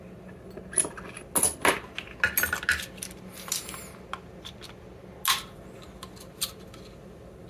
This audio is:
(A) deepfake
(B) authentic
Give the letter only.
B